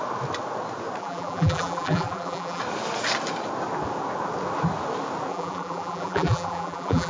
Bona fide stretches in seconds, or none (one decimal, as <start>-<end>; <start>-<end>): 0.0-1.0; 2.6-5.3